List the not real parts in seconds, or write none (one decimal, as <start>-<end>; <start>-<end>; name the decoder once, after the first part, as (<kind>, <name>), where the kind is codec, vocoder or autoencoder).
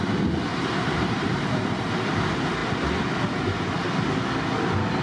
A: 0.5-2.0 (vocoder, BigVGAN v2)